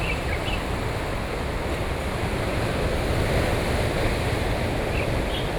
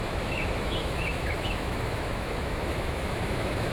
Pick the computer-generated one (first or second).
second